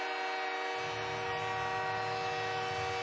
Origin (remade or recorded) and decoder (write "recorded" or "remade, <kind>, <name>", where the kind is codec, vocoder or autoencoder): recorded